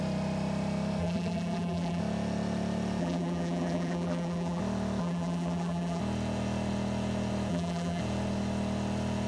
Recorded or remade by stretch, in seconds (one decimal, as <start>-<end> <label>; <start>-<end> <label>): 0.0-1.0 recorded; 1.0-2.0 remade; 2.0-3.0 recorded; 3.0-4.6 remade; 4.6-5.0 recorded; 5.0-6.0 remade; 6.0-7.5 recorded; 7.5-8.0 remade; 8.0-9.3 recorded